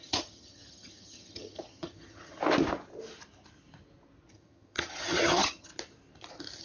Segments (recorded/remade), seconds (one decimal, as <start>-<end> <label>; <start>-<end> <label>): 0.0-2.4 remade; 2.4-4.3 recorded; 4.3-5.7 remade; 5.7-6.6 recorded